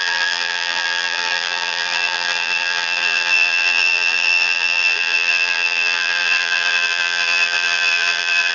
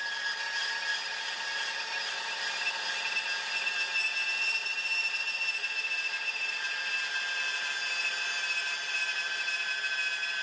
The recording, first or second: second